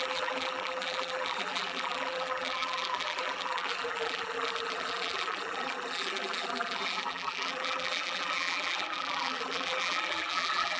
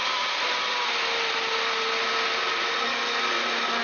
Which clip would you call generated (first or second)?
first